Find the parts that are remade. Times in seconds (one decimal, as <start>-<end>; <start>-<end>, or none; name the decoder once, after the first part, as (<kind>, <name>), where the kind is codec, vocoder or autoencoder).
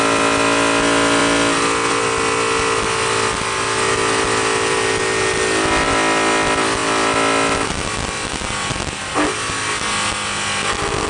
none